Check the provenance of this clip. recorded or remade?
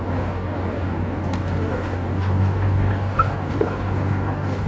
remade